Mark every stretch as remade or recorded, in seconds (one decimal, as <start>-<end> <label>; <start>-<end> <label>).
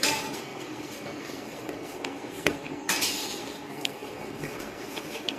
0.0-5.4 remade